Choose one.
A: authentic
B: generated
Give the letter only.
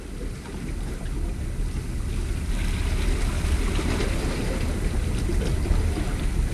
A